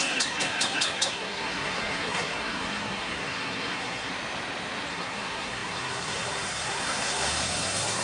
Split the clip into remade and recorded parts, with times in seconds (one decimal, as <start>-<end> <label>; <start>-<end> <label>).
0.0-4.1 remade; 4.1-4.9 recorded; 4.9-8.0 remade